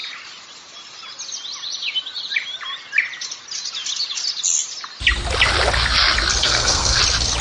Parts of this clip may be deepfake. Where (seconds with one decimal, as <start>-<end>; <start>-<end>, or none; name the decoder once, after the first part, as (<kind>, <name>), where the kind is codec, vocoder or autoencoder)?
6.4-7.0 (codec, SNAC)